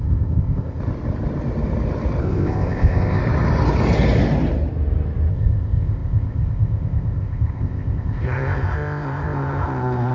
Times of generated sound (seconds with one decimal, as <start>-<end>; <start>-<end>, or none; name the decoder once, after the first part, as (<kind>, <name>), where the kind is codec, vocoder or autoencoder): 0.0-0.8 (codec, ZipCodec); 2.2-3.2; 5.3-10.1